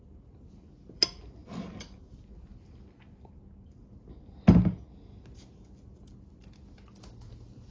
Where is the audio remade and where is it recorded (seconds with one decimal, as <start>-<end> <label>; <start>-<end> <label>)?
0.0-7.7 recorded